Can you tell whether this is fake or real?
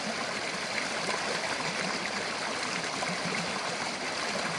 real